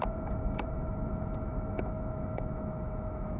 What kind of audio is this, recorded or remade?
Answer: remade